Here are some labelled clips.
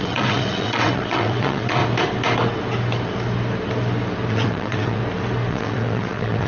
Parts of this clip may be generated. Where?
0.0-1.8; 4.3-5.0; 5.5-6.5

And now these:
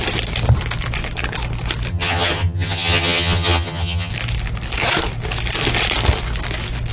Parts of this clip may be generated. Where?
1.9-4.1

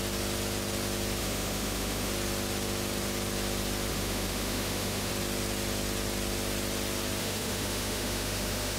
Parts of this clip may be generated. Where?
1.2-2.1; 3.9-5.1; 7.2-8.8

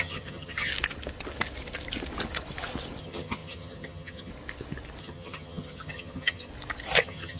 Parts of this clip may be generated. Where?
0.0-0.7; 3.0-4.3; 5.0-6.5; 7.0-7.4